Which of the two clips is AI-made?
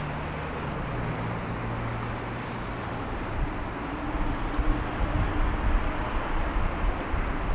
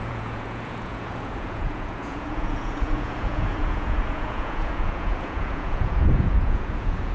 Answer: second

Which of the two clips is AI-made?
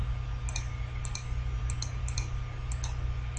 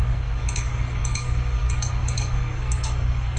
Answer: second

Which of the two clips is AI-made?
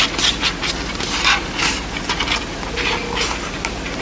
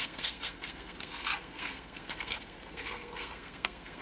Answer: second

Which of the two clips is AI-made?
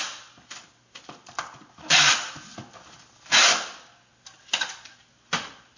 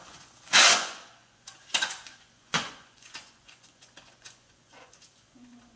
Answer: second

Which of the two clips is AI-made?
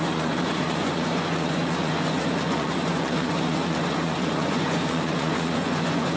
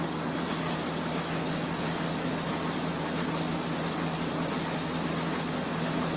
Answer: first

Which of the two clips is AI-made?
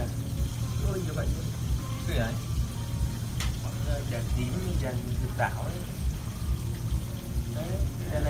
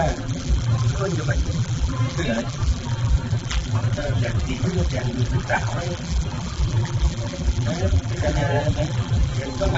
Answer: second